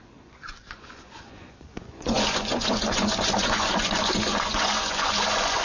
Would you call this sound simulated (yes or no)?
yes